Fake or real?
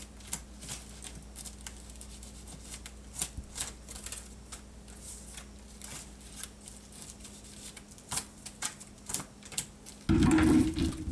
real